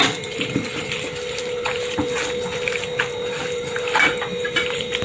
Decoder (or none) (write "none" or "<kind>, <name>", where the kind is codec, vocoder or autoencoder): none